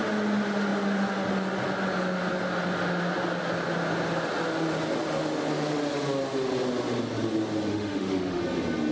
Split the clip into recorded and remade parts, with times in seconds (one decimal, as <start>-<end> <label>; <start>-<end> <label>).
0.0-7.7 recorded; 7.7-8.4 remade; 8.4-8.9 recorded